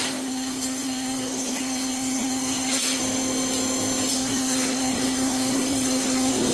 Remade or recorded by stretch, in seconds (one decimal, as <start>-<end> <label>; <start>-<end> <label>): 0.0-3.0 remade; 3.0-4.1 recorded; 4.1-6.5 remade